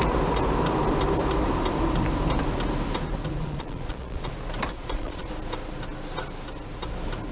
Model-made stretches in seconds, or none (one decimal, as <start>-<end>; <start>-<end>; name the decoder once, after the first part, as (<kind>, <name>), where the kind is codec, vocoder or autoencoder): 3.4-4.3 (vocoder, Vocos); 4.7-5.3